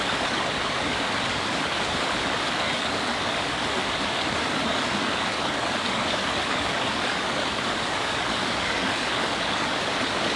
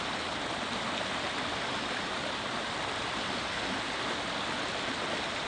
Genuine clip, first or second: second